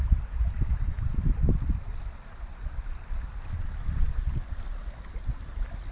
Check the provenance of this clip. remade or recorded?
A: recorded